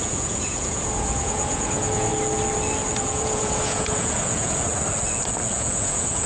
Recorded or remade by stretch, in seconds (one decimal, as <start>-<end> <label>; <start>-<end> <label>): 0.0-2.1 remade; 2.1-3.0 recorded; 3.0-4.7 remade; 4.7-5.5 recorded; 5.5-6.3 remade

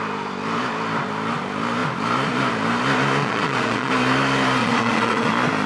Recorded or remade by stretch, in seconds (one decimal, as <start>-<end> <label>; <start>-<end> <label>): 0.0-3.2 recorded; 3.2-3.9 remade; 3.9-4.6 recorded; 4.6-5.3 remade; 5.3-5.7 recorded

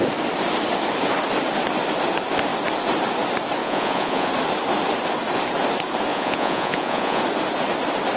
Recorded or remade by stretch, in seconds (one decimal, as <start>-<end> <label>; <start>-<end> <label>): 0.0-3.6 recorded; 3.6-4.3 remade; 4.3-6.1 recorded; 6.1-7.2 remade; 7.2-8.2 recorded

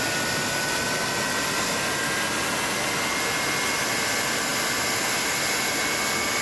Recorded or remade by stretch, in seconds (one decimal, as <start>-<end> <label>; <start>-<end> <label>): 0.0-6.4 recorded